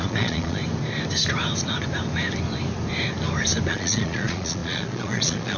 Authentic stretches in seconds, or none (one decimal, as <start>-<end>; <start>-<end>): 0.6-3.7